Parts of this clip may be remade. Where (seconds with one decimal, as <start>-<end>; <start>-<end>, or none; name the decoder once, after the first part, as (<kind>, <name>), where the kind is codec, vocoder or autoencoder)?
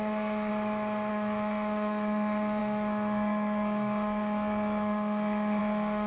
0.0-0.5 (codec, SNAC); 1.1-6.1